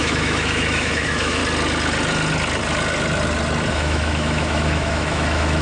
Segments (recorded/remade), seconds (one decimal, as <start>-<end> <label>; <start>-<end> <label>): 0.0-1.4 remade; 1.4-3.7 recorded; 3.7-5.6 remade